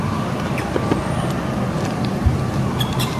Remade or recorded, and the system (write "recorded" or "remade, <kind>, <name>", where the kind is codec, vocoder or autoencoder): recorded